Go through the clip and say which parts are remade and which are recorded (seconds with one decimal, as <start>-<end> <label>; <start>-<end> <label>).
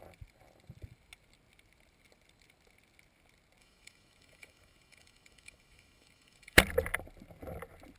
0.0-3.6 recorded; 3.6-6.6 remade; 6.6-8.0 recorded